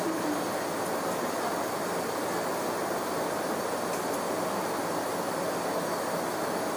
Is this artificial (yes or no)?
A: no